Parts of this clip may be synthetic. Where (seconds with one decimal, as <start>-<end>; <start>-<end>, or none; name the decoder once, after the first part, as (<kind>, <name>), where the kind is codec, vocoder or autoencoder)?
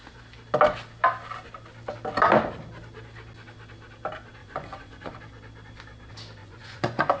4.4-5.1 (vocoder, Vocos); 6.4-7.2